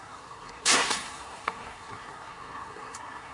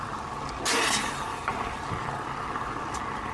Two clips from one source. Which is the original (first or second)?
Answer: second